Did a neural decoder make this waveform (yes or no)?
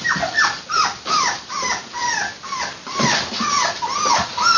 no